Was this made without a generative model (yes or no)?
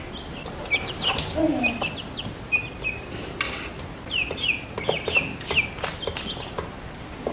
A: yes